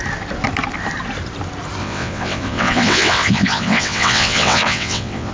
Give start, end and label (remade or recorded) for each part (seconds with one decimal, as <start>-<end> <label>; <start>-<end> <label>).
0.0-1.8 recorded; 1.8-5.3 remade